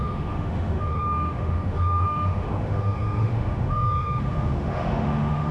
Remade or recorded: remade